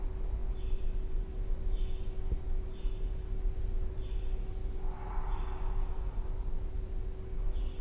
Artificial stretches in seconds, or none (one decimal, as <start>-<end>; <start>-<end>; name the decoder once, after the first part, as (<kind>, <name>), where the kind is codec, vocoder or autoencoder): 5.8-6.3 (codec, SNAC)